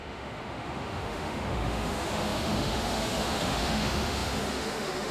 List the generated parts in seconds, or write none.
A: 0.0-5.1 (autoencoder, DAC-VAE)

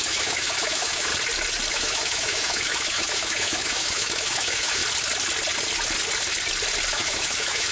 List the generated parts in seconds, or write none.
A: 0.0-1.1 (autoencoder, DAC-VAE); 1.7-4.8; 6.9-7.7